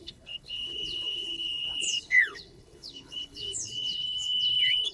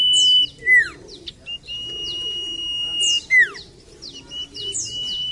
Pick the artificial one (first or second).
first